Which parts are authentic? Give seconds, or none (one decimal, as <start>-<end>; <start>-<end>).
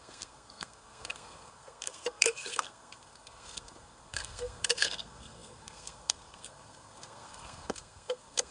none